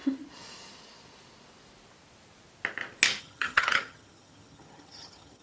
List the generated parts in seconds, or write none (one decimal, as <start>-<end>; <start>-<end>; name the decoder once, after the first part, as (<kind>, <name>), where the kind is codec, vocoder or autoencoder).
3.2-5.4 (vocoder, HiFi-GAN)